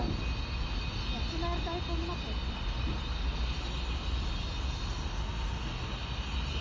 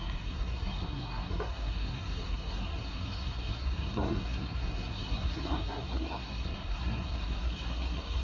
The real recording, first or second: first